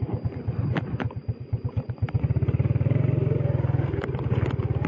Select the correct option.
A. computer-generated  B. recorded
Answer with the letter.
B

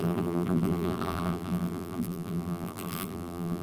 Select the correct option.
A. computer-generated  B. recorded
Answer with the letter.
A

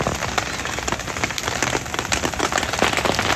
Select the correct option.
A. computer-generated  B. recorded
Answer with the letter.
B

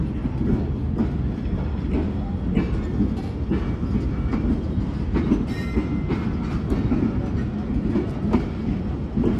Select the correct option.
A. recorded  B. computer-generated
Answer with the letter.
A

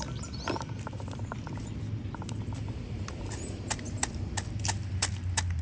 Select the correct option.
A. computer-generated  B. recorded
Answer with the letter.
A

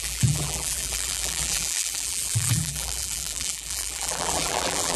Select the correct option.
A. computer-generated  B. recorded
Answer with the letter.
A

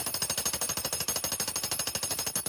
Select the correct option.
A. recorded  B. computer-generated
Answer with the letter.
A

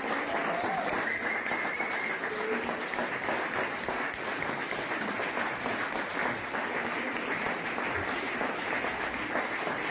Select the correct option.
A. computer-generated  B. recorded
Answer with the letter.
B